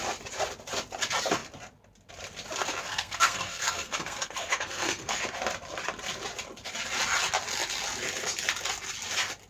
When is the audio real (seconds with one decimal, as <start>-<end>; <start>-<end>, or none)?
0.0-2.8; 5.2-9.5